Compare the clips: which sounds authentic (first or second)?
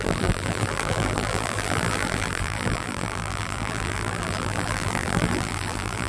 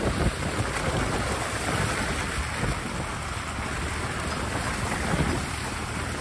second